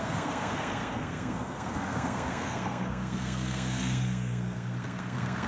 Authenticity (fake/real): fake